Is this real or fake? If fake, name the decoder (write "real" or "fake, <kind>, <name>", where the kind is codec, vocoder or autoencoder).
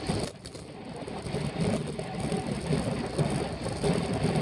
real